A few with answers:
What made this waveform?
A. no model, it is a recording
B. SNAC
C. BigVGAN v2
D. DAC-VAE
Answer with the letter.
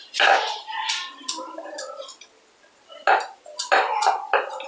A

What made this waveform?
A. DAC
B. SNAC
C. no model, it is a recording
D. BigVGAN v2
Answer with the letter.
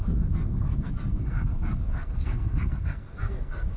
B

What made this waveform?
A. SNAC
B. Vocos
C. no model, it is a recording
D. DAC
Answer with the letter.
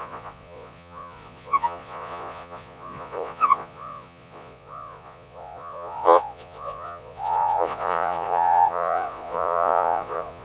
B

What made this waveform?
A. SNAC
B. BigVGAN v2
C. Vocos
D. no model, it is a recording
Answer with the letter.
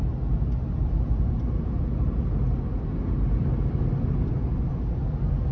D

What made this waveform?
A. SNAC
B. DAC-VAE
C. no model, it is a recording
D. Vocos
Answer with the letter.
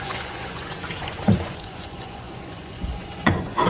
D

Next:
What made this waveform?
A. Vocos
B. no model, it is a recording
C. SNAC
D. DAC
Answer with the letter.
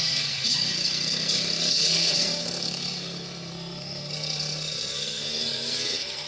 C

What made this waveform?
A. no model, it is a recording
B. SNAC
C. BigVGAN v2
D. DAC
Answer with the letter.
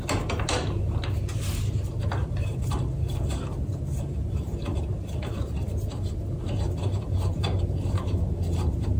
A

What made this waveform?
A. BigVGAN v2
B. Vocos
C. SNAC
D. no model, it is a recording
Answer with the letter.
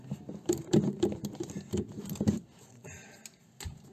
D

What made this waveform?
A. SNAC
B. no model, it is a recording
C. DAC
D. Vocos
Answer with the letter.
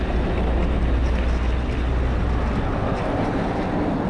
B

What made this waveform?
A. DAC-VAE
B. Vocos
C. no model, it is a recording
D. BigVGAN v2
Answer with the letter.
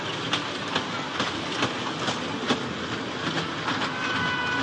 C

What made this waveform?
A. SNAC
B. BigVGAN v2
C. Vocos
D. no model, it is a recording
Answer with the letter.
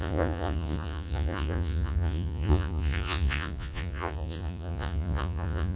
C